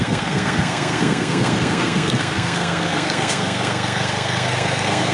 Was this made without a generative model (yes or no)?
no